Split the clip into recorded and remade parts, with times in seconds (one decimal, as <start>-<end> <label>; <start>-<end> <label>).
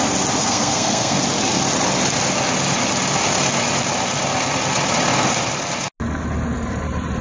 0.0-0.4 recorded; 0.4-1.2 remade; 1.2-7.2 recorded